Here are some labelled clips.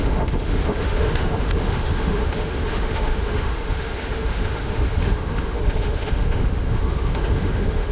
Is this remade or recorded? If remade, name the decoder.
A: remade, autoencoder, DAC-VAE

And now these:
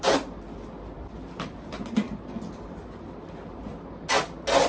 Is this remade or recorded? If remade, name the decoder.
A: recorded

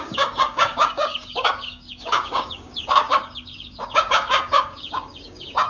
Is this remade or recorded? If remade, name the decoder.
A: remade, codec, DAC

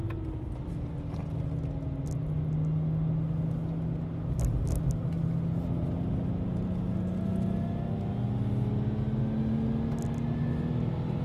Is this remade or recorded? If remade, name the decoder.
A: recorded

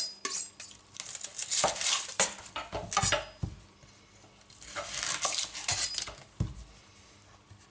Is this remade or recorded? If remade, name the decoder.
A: recorded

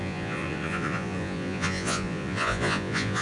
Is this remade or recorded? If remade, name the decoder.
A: remade, vocoder, Vocos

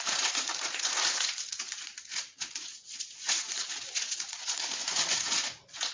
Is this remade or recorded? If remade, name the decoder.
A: remade, vocoder, Vocos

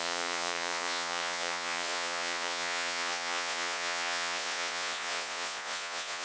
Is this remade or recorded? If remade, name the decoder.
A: remade, vocoder, Vocos